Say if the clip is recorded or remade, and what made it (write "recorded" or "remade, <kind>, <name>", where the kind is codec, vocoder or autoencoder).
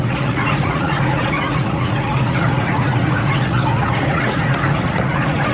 remade, vocoder, Vocos